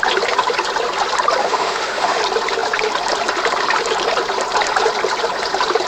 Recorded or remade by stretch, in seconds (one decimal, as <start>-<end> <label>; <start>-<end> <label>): 0.0-1.4 recorded; 1.4-2.2 remade; 2.2-5.9 recorded